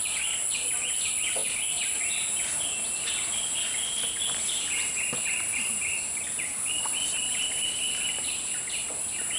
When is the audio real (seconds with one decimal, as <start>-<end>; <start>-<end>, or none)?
0.0-9.4